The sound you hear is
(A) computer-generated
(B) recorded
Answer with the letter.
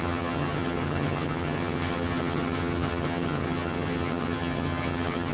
A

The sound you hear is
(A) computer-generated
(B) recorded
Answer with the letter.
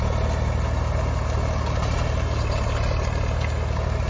B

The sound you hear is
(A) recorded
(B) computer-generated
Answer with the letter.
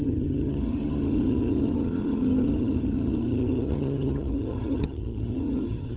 B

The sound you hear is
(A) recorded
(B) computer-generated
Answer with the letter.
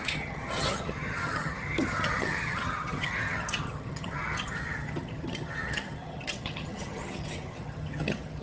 B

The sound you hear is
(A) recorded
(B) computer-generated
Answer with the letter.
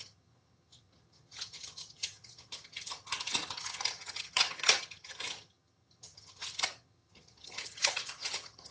B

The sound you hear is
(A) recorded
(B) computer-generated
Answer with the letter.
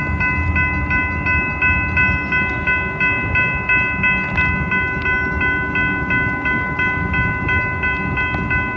A